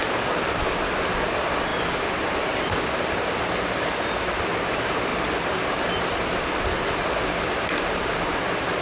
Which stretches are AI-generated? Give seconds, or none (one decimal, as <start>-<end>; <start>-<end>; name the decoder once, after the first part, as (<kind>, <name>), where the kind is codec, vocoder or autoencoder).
none